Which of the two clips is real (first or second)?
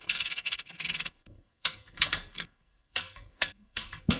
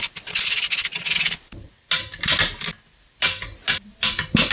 second